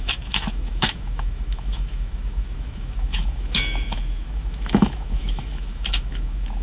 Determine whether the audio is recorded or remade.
remade